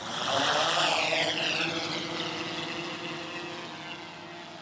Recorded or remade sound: recorded